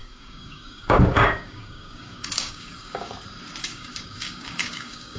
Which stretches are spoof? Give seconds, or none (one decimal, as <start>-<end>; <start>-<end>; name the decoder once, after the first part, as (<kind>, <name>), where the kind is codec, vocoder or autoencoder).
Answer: 0.0-3.1 (codec, DAC); 3.6-5.2